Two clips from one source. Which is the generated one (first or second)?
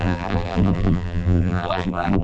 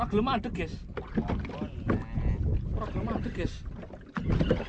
first